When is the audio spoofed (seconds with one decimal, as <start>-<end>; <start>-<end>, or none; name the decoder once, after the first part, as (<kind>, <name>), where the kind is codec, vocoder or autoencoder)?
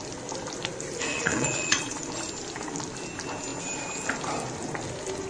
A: 1.1-2.0 (vocoder, Vocos)